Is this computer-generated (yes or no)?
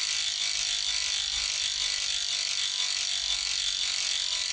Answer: no